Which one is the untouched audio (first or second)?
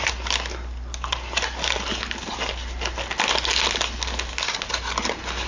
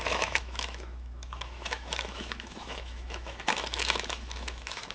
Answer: first